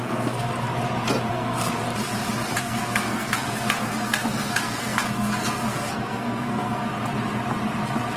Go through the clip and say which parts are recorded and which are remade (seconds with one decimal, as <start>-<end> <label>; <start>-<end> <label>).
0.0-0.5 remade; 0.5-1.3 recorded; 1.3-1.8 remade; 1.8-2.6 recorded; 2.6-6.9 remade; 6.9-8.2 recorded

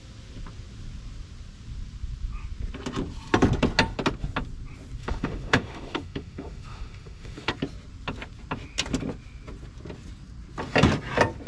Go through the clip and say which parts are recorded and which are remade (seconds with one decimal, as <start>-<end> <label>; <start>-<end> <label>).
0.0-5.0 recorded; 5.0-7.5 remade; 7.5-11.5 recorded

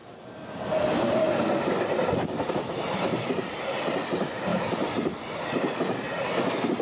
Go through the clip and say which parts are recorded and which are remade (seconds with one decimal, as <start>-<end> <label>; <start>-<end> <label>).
0.0-0.7 recorded; 0.7-1.2 remade; 1.2-2.5 recorded; 2.5-6.8 remade

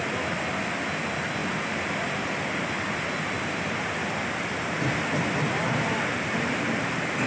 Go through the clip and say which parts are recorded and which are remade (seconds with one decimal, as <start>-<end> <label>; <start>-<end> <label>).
0.0-7.3 recorded

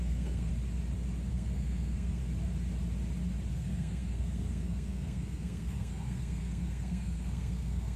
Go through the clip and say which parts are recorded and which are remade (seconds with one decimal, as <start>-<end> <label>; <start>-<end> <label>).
0.0-0.5 remade; 0.5-1.3 recorded; 1.3-2.2 remade; 2.2-3.5 recorded; 3.5-8.0 remade